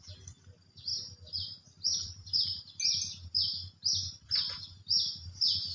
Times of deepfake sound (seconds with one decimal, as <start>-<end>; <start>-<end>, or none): none